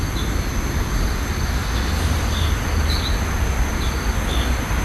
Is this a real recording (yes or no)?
yes